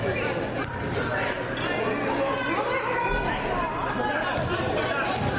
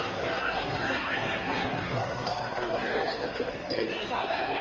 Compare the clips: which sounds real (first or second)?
first